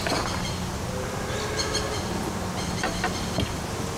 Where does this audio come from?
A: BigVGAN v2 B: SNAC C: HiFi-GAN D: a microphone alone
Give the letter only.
D